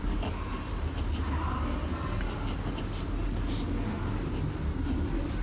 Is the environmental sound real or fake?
real